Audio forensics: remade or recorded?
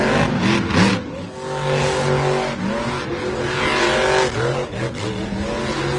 recorded